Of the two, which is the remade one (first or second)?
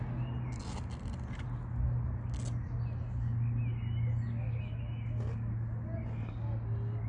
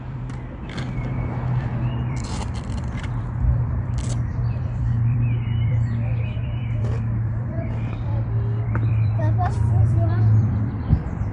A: second